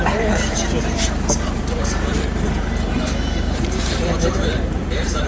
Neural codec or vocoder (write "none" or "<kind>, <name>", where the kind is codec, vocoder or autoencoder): vocoder, BigVGAN v2